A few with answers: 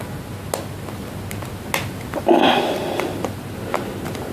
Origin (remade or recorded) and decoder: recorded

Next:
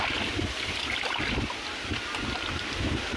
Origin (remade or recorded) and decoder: recorded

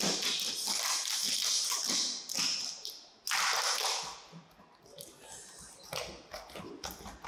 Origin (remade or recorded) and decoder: recorded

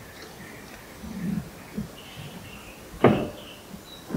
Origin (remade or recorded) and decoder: recorded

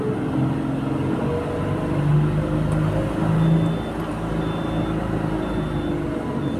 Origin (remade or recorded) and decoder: recorded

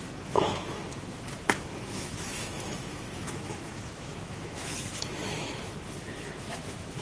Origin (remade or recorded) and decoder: remade, autoencoder, DAC-VAE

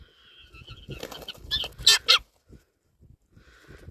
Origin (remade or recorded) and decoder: recorded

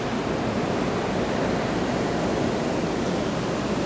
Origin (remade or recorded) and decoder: recorded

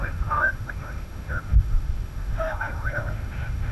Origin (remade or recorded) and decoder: remade, autoencoder, DAC-VAE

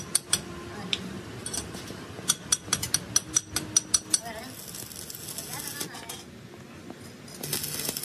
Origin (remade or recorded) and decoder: recorded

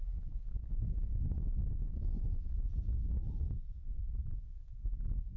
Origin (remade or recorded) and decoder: recorded